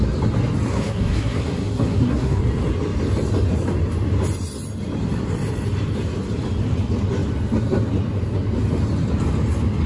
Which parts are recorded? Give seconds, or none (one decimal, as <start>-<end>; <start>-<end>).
0.0-0.7; 2.4-9.9